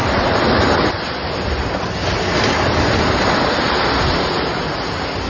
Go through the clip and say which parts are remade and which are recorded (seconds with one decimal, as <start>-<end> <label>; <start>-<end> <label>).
0.0-5.3 recorded